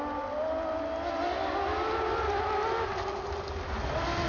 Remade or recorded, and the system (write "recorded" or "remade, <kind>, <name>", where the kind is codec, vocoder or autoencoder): recorded